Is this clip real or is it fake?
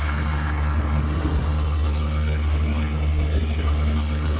fake